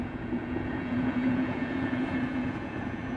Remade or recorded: remade